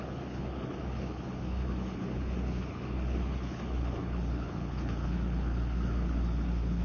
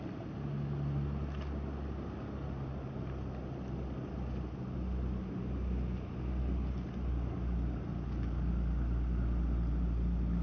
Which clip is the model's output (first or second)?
first